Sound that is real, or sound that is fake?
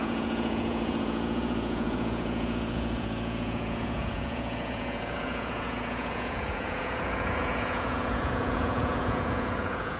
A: fake